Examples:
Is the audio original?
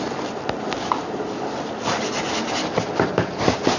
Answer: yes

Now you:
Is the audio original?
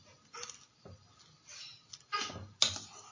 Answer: yes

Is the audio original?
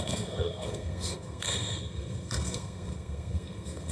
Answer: no